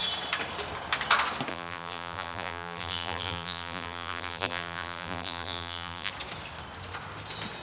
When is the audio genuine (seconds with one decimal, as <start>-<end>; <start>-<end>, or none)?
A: 0.0-1.5; 6.1-7.6